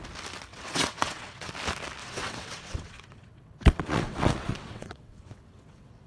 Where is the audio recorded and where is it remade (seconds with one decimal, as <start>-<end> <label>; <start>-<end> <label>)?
0.0-0.5 recorded; 0.5-1.5 remade; 1.5-2.0 recorded; 2.0-6.1 remade